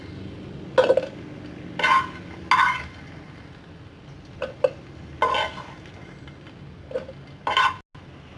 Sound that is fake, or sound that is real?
real